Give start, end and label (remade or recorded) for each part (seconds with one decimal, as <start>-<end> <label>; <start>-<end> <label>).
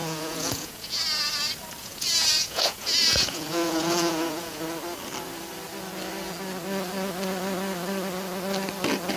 0.0-1.0 remade; 1.0-1.8 recorded; 1.8-4.6 remade; 4.6-9.2 recorded